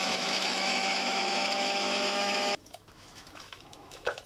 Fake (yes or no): yes